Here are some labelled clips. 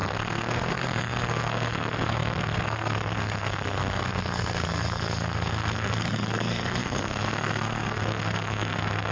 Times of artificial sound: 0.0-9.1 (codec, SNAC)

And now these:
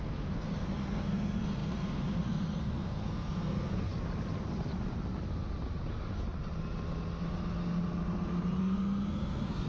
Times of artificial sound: 0.0-3.9 (codec, SNAC); 8.6-9.7

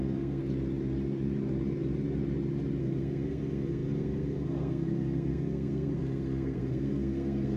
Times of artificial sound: 0.0-0.4 (codec, SNAC); 2.8-7.6

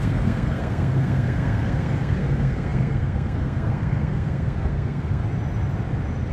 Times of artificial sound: 0.0-5.2 (codec, SNAC)

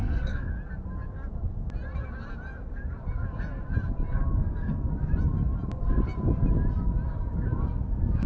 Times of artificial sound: 0.0-0.5 (codec, SNAC); 4.3-4.9

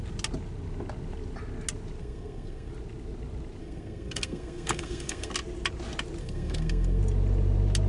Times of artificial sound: 2.0-2.7 (codec, SNAC); 3.6-5.3; 6.2-7.0